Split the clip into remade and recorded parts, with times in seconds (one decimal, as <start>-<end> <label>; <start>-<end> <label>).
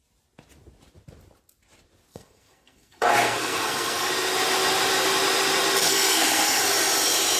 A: 0.0-2.1 recorded; 2.1-4.1 remade; 4.1-5.8 recorded; 5.8-6.6 remade; 6.6-7.4 recorded